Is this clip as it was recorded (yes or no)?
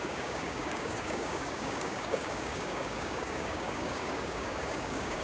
no